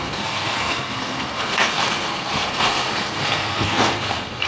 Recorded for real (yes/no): no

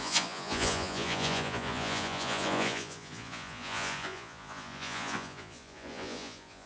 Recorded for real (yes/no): no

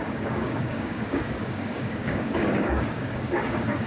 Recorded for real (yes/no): no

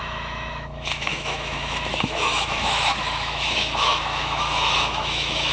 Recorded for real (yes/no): no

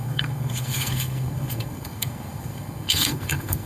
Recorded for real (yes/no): no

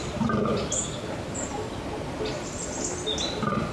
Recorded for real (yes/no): yes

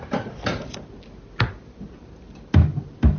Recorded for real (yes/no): yes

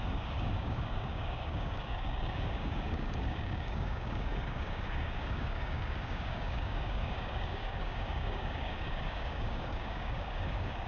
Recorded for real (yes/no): no